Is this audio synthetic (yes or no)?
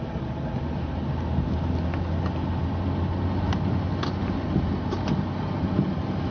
no